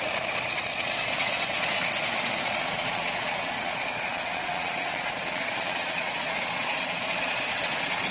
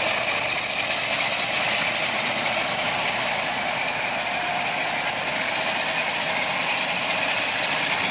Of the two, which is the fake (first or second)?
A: first